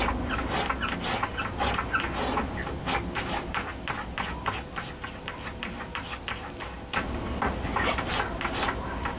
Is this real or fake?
real